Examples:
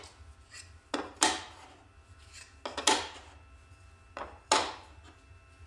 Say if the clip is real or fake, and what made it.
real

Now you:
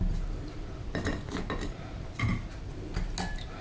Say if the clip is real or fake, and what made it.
real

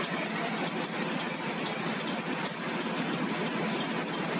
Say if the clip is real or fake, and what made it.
real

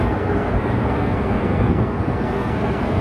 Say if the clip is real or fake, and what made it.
fake, codec, SNAC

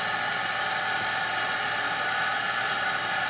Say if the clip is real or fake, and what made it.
real